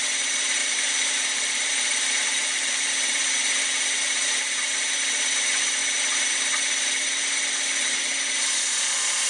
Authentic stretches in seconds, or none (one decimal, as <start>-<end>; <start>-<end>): 0.0-0.6; 5.0-9.3